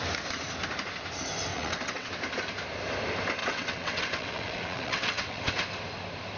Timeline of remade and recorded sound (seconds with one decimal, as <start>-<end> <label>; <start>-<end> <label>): 0.0-1.5 recorded; 1.5-2.1 remade; 2.1-3.4 recorded; 3.4-5.5 remade; 5.5-6.4 recorded